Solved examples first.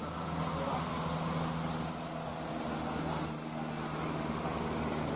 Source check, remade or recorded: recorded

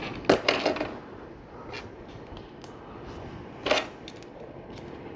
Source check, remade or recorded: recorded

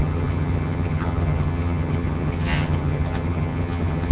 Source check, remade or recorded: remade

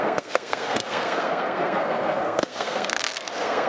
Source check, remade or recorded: remade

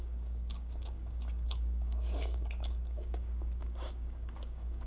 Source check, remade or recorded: remade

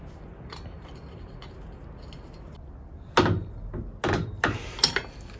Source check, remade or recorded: recorded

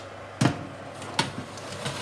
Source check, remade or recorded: recorded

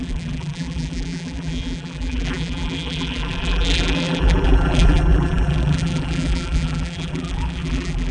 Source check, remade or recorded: remade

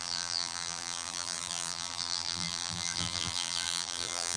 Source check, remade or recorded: remade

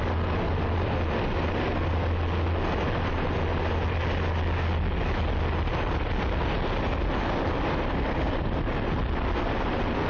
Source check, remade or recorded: recorded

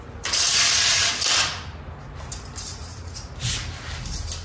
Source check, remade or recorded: recorded